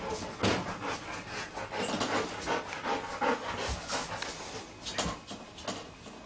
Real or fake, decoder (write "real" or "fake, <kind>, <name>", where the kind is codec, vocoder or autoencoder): real